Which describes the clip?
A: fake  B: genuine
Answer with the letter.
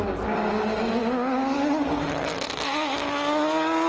B